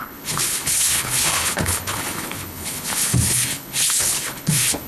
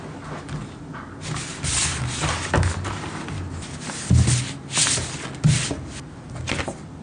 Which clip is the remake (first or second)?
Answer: first